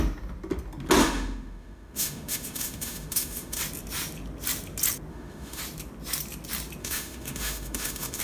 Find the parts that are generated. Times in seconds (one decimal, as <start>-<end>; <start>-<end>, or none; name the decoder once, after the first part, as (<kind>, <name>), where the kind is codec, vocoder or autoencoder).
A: 1.0-3.6 (autoencoder, DAC-VAE); 5.1-5.6; 6.8-8.2